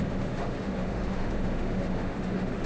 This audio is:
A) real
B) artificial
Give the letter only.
B